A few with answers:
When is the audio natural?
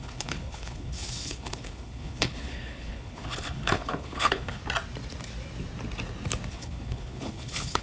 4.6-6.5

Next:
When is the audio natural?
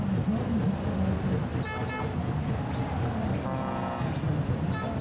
0.0-5.0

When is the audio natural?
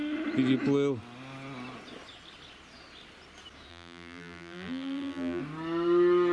0.0-3.7; 5.4-6.3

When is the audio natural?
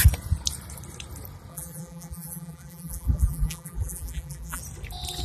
0.0-1.5; 4.6-5.2